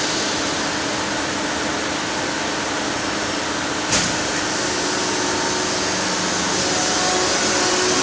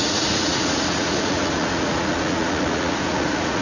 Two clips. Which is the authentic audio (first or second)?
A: first